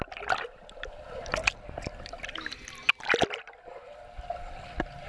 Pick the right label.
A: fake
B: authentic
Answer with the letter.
B